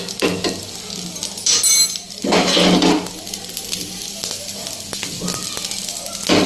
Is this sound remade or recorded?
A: recorded